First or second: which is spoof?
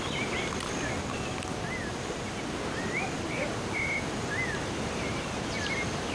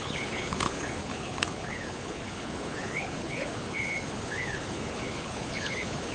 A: second